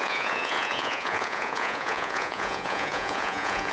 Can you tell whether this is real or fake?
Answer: fake